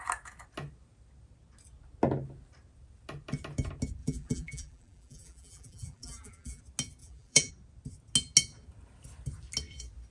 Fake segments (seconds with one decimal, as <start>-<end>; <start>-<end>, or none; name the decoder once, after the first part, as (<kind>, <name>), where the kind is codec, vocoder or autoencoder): 4.0-6.6 (vocoder, BigVGAN v2); 7.0-7.5